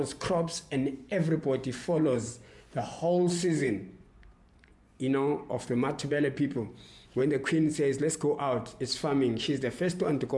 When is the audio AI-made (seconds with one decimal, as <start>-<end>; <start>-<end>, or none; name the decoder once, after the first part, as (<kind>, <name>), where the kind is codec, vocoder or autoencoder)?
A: 0.0-7.2 (vocoder, Vocos); 9.4-10.4